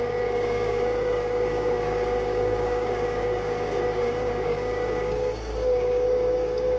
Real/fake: fake